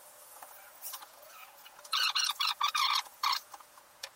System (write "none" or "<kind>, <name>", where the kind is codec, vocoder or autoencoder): vocoder, Vocos